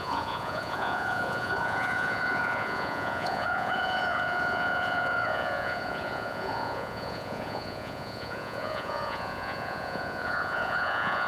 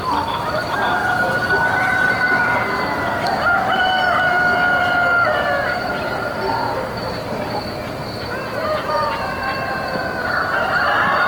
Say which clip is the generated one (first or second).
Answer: first